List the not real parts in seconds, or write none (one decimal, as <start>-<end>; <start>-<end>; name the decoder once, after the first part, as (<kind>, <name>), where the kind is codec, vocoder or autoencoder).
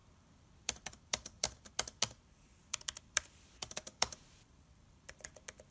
0.0-1.7 (vocoder, BigVGAN v2); 2.6-5.3